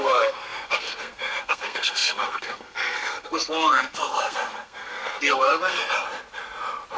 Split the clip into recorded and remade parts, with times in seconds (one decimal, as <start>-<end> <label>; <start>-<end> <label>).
0.0-5.8 remade; 5.8-7.0 recorded